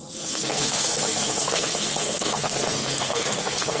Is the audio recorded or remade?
remade